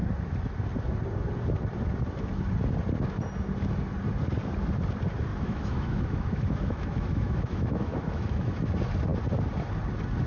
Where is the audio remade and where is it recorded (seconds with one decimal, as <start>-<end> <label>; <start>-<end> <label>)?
0.0-5.3 recorded; 5.3-8.7 remade; 8.7-10.3 recorded